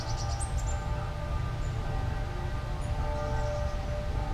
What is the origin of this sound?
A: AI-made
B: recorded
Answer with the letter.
B